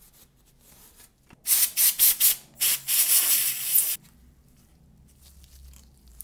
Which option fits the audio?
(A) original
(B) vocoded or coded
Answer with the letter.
A